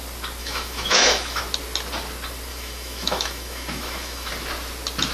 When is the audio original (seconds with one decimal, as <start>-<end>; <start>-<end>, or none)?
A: 0.0-0.4; 1.4-2.5; 4.3-5.1